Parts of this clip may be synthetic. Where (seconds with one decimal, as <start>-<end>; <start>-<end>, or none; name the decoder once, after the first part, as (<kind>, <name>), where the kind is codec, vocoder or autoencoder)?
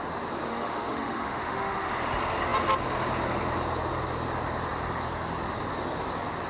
0.5-1.9 (autoencoder, DAC-VAE)